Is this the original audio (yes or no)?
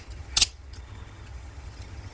no